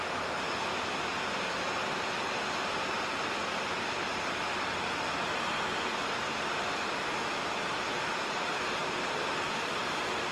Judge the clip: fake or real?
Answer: real